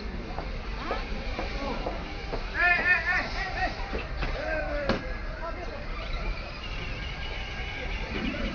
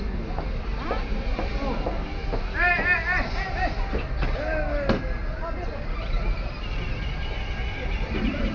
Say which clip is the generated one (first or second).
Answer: first